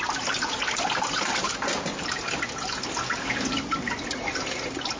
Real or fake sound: real